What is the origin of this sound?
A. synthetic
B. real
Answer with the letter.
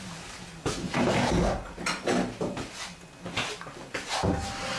B